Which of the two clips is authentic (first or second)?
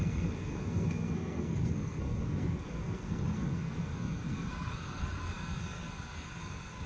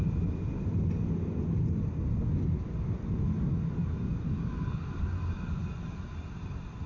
second